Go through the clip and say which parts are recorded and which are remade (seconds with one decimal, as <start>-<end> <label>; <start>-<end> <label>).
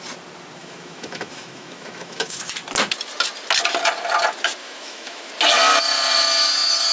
0.0-0.6 recorded; 0.6-2.4 remade; 2.4-4.6 recorded; 4.6-5.3 remade; 5.3-6.9 recorded